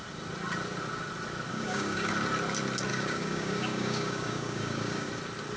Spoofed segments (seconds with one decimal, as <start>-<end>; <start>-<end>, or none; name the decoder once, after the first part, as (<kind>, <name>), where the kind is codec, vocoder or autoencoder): 1.5-2.1 (codec, DAC); 2.9-5.1